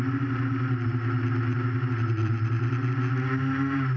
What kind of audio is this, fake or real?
real